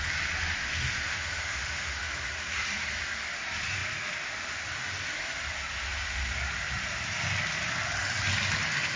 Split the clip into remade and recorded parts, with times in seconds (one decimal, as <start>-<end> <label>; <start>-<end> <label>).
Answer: 0.0-0.6 recorded; 0.6-2.1 remade; 2.1-9.0 recorded